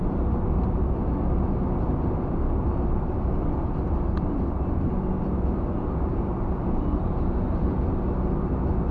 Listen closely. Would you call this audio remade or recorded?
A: recorded